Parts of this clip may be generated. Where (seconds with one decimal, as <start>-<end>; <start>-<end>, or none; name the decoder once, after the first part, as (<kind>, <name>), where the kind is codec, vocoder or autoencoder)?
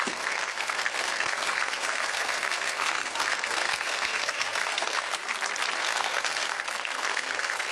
0.0-5.2 (codec, SNAC); 5.8-7.7